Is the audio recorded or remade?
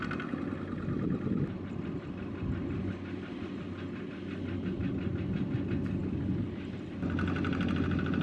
recorded